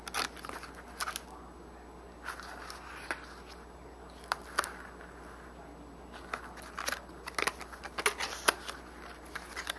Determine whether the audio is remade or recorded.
recorded